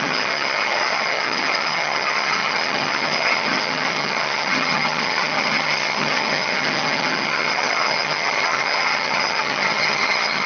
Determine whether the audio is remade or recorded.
remade